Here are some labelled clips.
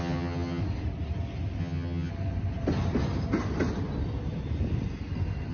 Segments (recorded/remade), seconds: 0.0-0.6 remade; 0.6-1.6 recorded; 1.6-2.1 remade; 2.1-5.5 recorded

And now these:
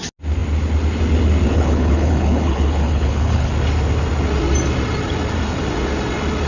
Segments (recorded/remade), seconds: 0.0-1.5 recorded; 1.5-3.5 remade; 3.5-6.5 recorded

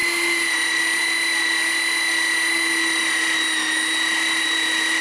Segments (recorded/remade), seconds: 0.0-5.0 recorded

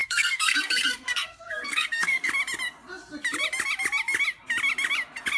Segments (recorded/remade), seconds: 0.0-2.3 remade; 2.3-5.4 recorded